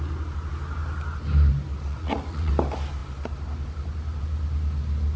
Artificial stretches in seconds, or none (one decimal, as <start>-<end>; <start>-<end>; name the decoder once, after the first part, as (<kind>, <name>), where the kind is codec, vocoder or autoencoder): 1.9-2.5 (vocoder, Vocos)

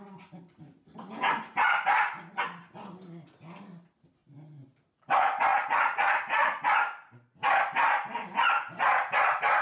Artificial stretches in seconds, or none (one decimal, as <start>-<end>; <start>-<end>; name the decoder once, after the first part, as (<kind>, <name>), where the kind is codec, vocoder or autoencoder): 5.5-6.6 (vocoder, Vocos)

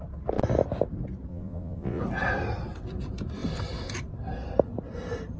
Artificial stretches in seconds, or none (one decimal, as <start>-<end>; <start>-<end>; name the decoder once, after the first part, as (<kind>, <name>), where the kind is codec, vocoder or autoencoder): 1.3-2.0 (vocoder, Vocos)